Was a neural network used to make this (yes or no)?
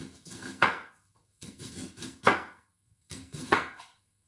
yes